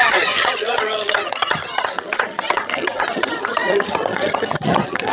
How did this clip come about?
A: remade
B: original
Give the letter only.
A